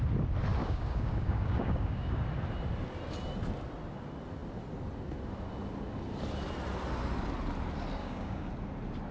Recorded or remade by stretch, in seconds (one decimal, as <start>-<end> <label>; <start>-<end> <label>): 0.0-0.6 recorded; 0.6-2.2 remade; 2.2-8.0 recorded; 8.0-8.5 remade; 8.5-9.1 recorded

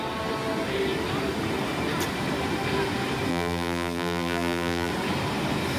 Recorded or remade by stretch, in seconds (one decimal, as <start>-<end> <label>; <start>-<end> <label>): 0.0-3.3 recorded; 3.3-4.9 remade; 4.9-5.8 recorded

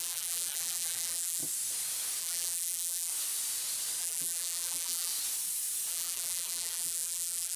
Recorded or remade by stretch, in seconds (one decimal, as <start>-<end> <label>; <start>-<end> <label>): 0.0-1.4 remade; 1.4-2.2 recorded; 2.2-3.1 remade; 3.1-4.0 recorded; 4.0-5.1 remade; 5.1-5.9 recorded; 5.9-7.6 remade

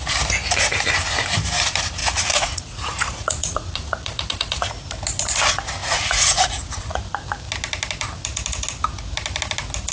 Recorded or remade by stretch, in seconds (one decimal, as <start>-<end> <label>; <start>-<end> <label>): 0.0-2.0 recorded; 2.0-4.7 remade; 4.7-5.8 recorded; 5.8-7.0 remade; 7.0-9.9 recorded

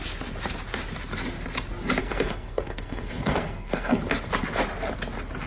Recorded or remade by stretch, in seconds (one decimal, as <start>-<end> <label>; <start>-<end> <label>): 0.0-2.0 recorded; 2.0-4.0 remade; 4.0-5.5 recorded

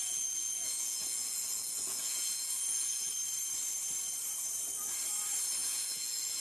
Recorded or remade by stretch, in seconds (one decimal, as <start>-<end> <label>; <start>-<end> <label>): 0.0-3.1 remade; 3.1-5.6 recorded; 5.6-6.4 remade

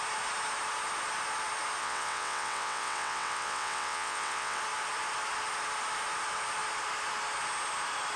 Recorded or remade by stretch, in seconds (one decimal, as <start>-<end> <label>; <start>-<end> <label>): 0.0-1.8 recorded; 1.8-4.6 remade; 4.6-8.2 recorded

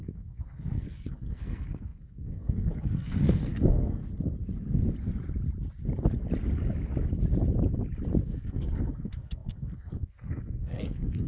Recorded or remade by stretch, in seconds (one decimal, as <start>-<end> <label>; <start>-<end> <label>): 0.0-4.0 remade; 4.0-8.2 recorded; 8.2-11.3 remade